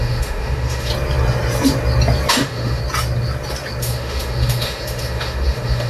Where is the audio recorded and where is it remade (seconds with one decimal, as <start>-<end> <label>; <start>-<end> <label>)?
0.0-0.9 remade; 0.9-2.3 recorded; 2.3-2.8 remade; 2.8-3.8 recorded; 3.8-5.9 remade